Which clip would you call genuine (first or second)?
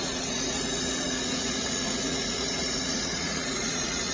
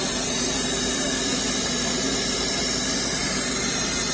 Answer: second